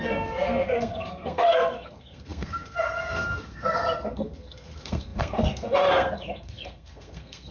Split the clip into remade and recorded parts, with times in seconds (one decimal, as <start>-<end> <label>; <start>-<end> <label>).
0.0-7.5 remade